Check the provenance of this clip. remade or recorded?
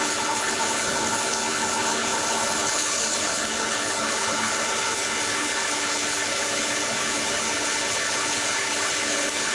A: remade